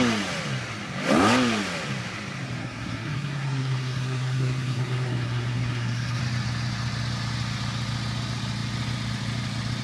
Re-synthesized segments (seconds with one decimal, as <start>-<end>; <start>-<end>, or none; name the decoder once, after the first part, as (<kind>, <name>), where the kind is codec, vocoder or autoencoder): 2.6-6.2 (codec, SNAC)